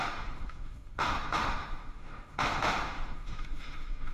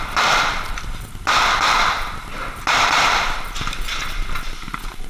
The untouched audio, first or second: second